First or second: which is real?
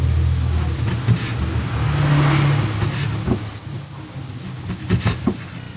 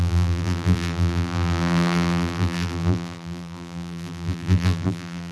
first